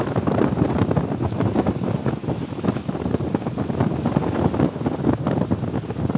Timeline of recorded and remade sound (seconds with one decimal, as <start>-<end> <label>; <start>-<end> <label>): 0.0-2.2 recorded; 2.2-2.8 remade; 2.8-6.2 recorded